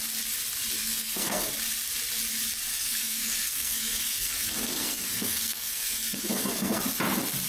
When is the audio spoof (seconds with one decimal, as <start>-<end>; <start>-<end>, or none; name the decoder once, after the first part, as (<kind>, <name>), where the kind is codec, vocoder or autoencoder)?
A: 0.8-1.5 (codec, SNAC); 2.7-6.8